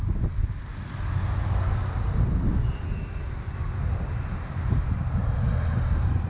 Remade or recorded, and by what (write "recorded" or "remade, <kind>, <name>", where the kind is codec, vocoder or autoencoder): recorded